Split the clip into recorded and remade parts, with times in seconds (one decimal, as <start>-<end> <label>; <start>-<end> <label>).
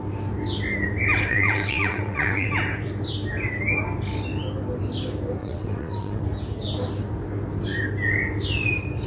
0.0-1.3 recorded; 1.3-2.5 remade; 2.5-5.4 recorded; 5.4-6.2 remade; 6.2-9.1 recorded